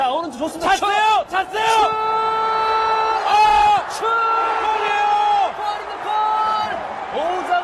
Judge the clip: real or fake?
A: real